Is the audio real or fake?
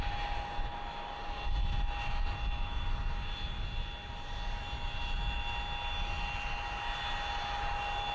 real